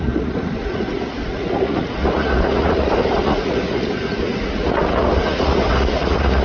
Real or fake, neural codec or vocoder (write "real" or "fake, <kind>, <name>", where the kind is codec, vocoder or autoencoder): fake, vocoder, Vocos